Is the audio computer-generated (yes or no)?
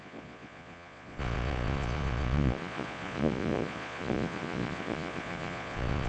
yes